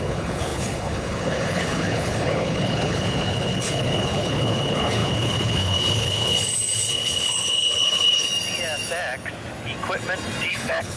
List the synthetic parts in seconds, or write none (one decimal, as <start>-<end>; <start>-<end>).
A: 0.0-8.3; 10.5-11.0